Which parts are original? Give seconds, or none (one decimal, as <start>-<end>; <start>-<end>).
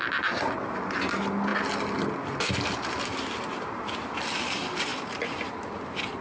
0.0-6.2